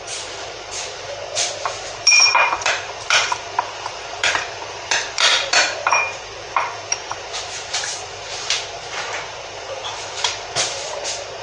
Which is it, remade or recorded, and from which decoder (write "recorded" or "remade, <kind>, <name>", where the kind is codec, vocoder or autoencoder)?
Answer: remade, vocoder, BigVGAN v2